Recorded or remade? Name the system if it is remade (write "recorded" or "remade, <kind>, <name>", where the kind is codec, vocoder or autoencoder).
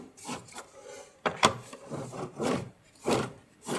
remade, vocoder, BigVGAN v2